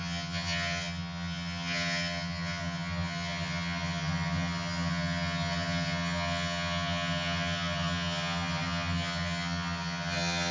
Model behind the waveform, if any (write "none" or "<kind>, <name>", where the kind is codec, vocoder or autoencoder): vocoder, HiFi-GAN